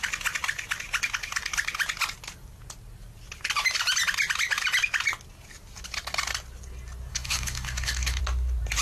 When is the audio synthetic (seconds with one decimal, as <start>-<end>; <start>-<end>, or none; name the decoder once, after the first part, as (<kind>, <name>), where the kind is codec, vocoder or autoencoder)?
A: 7.1-8.2 (codec, DAC)